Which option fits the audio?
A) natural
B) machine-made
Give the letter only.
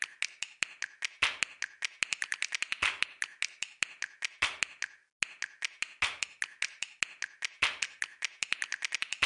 A